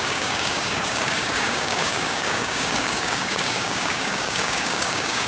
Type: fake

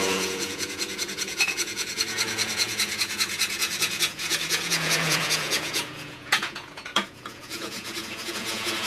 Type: fake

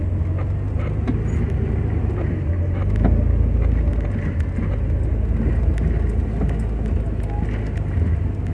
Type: real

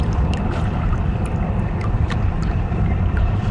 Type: fake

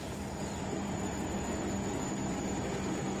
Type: real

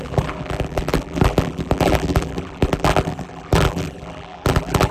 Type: fake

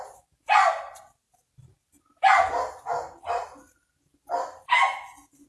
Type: real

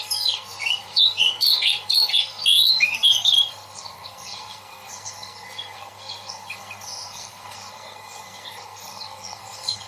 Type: fake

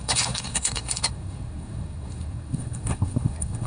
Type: fake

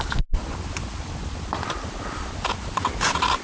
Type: real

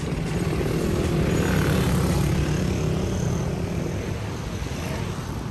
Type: real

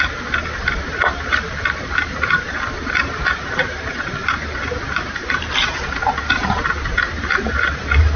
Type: fake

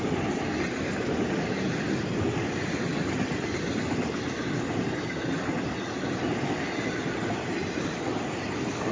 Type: real